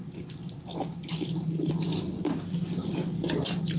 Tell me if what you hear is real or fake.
fake